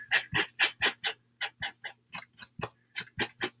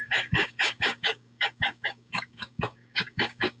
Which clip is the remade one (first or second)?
second